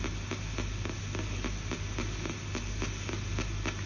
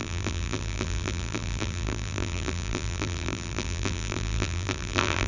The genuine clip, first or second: first